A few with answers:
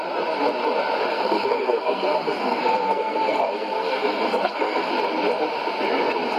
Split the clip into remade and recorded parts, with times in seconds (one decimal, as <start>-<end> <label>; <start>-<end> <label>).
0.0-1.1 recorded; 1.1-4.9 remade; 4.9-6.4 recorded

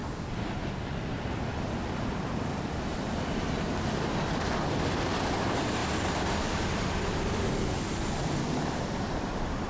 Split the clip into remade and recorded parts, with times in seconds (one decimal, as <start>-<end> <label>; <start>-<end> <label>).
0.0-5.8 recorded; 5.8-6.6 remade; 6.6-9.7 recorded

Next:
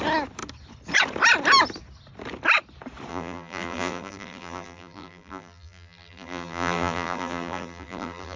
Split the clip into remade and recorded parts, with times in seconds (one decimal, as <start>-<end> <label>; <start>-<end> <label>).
0.0-3.1 recorded; 3.1-8.4 remade